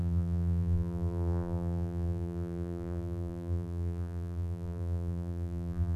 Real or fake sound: fake